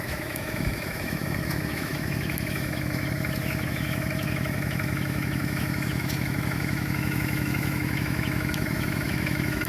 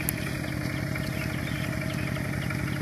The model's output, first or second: first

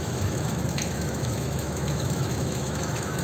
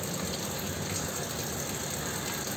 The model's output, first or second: first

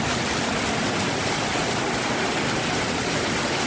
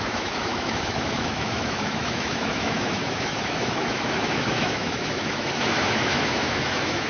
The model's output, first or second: second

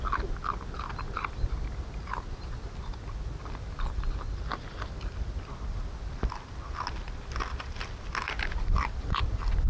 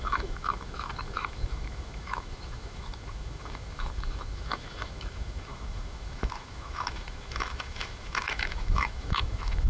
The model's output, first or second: second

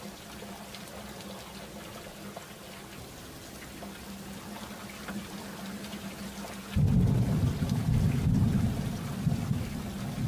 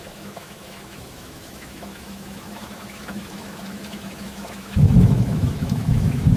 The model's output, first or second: second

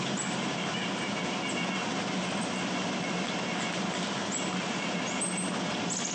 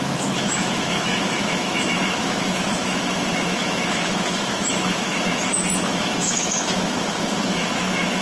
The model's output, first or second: second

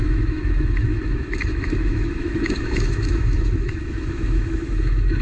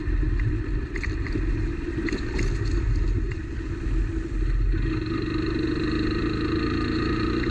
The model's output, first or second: first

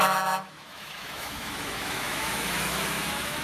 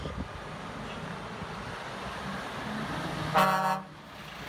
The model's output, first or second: first